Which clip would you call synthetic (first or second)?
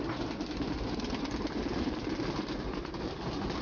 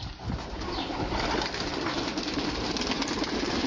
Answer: second